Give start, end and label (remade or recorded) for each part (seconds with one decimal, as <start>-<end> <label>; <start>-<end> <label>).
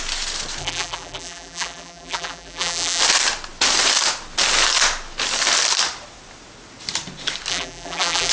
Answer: 0.0-0.6 recorded; 0.6-3.0 remade; 3.0-7.5 recorded; 7.5-8.3 remade